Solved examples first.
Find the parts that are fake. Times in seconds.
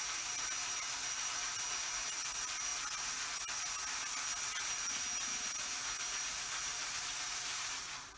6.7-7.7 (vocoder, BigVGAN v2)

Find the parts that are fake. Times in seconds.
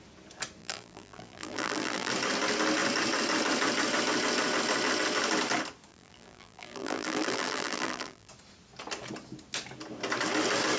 0.6-2.1 (vocoder, BigVGAN v2); 5.9-8.3